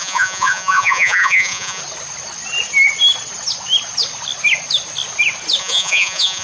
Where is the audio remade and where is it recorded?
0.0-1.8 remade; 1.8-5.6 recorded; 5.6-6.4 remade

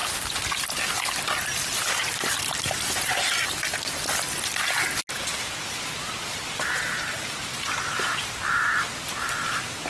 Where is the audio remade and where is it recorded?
0.0-9.9 recorded

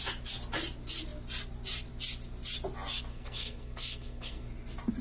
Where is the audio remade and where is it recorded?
0.0-3.1 recorded; 3.1-4.5 remade; 4.5-5.0 recorded